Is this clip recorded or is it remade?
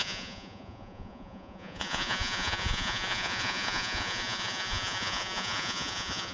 remade